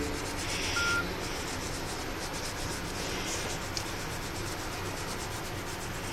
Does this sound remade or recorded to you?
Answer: recorded